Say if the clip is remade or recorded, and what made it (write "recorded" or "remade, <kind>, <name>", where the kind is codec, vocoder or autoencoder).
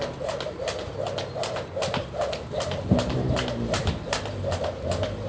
recorded